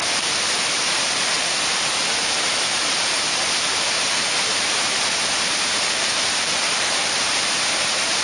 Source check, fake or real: fake